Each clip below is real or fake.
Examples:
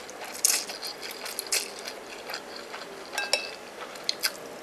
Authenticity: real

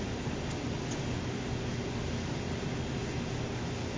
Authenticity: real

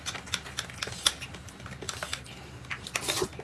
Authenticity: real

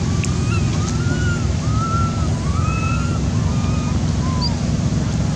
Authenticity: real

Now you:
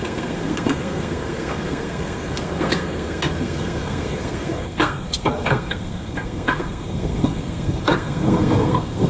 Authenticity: fake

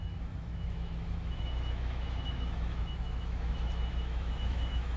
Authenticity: fake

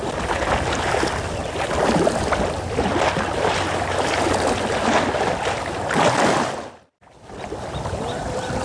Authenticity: real